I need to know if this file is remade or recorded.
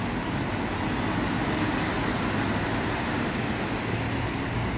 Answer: recorded